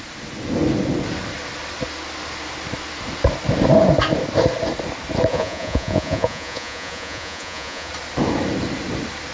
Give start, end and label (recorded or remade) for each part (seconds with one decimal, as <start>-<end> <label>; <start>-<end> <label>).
0.0-5.3 recorded; 5.3-7.9 remade; 7.9-9.3 recorded